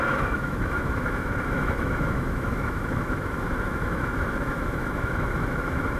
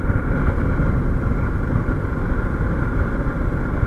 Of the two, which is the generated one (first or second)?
first